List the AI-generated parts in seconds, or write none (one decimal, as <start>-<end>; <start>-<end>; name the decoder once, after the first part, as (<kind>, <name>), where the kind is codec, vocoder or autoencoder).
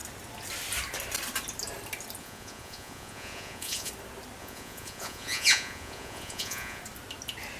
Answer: 2.2-3.9 (vocoder, Vocos); 4.4-6.8